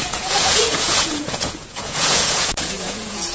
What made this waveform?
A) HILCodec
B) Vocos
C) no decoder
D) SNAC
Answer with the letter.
B